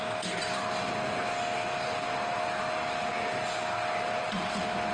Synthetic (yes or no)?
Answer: no